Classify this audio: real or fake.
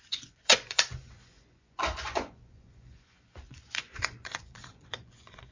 fake